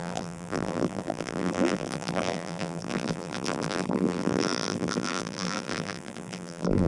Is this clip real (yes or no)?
no